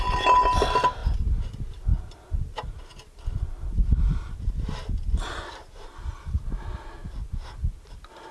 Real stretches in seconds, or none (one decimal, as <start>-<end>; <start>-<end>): 0.0-8.3